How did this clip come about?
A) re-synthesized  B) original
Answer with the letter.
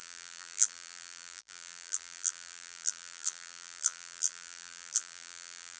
A